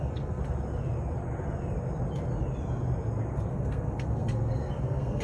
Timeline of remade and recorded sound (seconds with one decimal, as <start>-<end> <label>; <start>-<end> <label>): 0.0-0.4 remade; 0.4-3.5 recorded; 3.5-5.2 remade

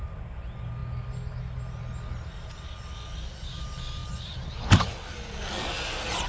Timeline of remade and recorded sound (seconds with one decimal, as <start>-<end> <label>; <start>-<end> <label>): 0.0-6.3 recorded

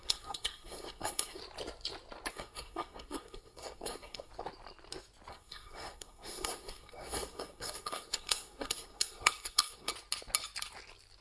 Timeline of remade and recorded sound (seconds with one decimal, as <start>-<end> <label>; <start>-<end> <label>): 0.0-1.4 remade; 1.4-2.3 recorded; 2.3-4.3 remade; 4.3-5.3 recorded; 5.3-9.9 remade; 9.9-11.2 recorded

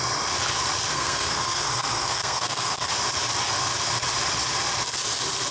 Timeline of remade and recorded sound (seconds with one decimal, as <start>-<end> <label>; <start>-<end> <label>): 0.0-0.9 recorded; 0.9-2.9 remade; 2.9-5.5 recorded